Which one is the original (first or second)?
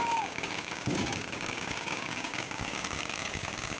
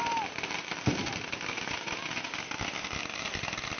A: second